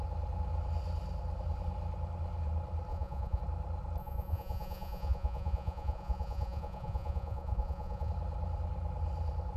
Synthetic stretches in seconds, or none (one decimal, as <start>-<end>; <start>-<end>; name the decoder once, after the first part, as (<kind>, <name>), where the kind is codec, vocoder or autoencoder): 2.9-3.4 (vocoder, Vocos); 4.0-8.1